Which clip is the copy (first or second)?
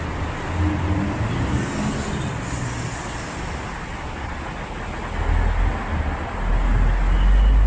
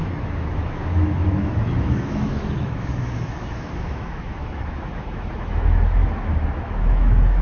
second